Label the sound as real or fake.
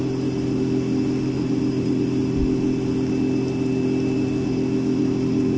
real